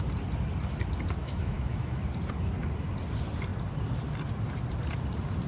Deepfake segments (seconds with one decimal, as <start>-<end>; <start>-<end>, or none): 1.2-2.0

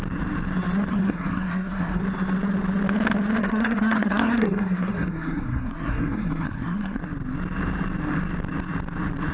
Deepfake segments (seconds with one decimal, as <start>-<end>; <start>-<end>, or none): 0.9-2.0; 3.4-7.0

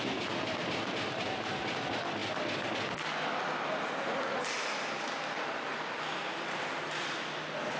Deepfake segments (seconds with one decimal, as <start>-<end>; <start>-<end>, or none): none

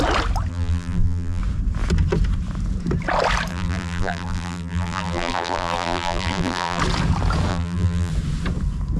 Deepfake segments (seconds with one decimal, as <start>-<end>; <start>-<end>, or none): 0.5-1.4; 3.5-6.8; 7.5-8.1

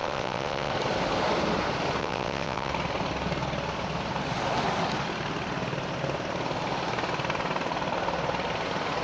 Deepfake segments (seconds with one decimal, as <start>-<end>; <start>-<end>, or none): 0.0-0.7; 2.0-2.7